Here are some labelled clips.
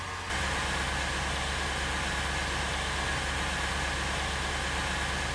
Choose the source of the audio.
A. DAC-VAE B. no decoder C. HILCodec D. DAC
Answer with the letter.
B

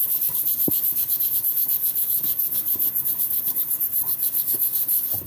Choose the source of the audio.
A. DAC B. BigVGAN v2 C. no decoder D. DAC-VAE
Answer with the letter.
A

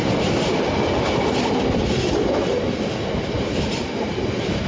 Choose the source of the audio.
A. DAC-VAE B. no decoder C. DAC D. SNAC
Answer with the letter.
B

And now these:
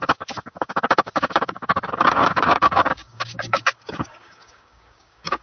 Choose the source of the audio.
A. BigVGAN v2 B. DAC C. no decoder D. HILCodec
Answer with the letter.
B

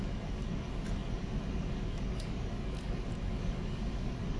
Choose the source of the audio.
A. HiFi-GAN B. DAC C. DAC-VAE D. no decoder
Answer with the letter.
B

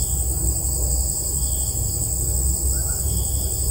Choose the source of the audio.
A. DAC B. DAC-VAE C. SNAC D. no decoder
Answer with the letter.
D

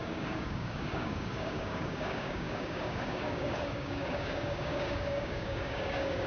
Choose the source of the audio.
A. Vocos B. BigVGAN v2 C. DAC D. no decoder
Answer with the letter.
C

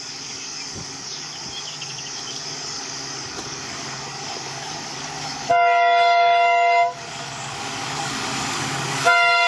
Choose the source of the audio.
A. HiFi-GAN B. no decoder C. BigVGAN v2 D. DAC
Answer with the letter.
D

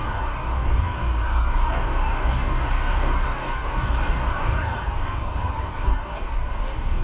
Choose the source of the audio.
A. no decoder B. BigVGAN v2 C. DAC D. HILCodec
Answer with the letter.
C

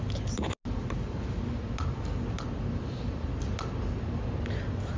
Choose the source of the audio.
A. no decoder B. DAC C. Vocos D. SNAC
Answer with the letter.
A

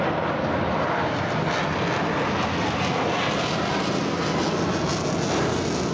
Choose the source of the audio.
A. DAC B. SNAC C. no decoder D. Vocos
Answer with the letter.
C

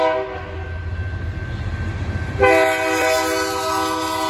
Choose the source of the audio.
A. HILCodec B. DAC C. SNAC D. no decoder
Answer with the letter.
D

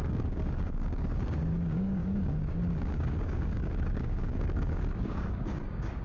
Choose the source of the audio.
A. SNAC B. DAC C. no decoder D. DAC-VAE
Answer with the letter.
B